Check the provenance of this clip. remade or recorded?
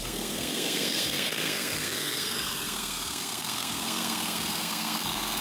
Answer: remade